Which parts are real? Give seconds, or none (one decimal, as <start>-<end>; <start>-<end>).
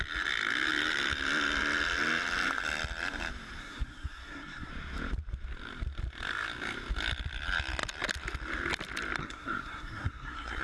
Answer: 0.0-3.6; 4.7-9.2